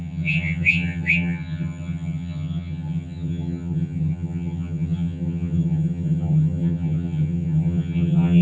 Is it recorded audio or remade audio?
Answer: remade